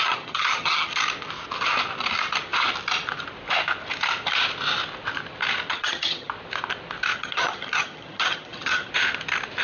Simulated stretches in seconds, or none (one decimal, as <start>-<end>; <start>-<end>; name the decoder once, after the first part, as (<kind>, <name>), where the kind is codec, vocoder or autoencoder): 0.0-1.0 (vocoder, HiFi-GAN); 5.7-6.3; 7.1-8.9